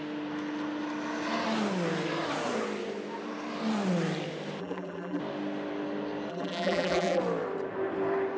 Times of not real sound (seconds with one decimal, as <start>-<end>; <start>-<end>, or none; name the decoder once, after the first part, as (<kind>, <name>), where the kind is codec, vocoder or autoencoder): 4.6-5.2 (vocoder, BigVGAN v2); 6.3-7.2

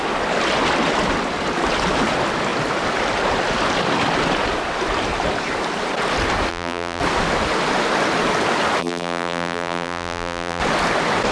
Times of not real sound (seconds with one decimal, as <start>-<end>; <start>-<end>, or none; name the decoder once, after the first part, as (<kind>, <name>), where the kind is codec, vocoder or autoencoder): 6.5-7.0 (vocoder, BigVGAN v2); 8.8-10.6